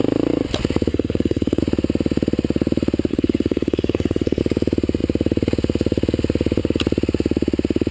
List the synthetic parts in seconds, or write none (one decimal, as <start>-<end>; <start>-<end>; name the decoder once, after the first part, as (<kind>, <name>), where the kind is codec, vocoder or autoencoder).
0.9-1.6 (codec, SNAC); 3.1-4.4